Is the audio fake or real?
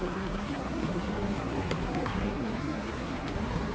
fake